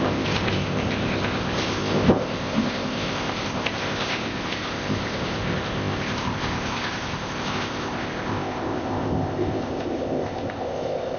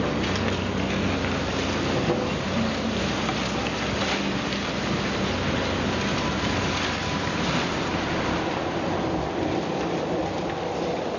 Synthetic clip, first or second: first